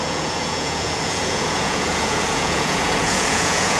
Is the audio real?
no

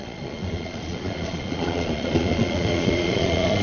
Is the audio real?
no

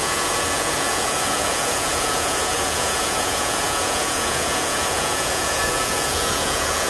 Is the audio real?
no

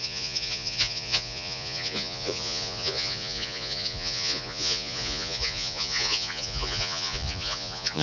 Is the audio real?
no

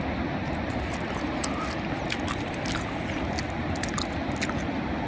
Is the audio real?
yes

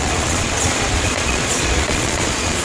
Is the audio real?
no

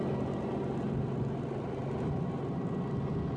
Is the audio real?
yes